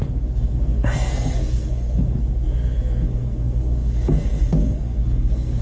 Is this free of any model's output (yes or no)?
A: no